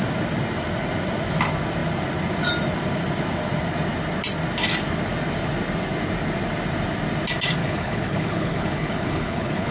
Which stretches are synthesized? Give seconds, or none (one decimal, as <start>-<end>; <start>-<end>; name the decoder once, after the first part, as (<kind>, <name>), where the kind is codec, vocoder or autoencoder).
7.6-9.7 (codec, HILCodec)